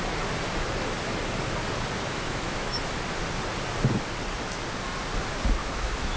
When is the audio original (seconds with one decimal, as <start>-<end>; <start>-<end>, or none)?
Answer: 0.0-2.1; 2.9-5.6